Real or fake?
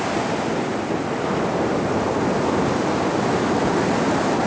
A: real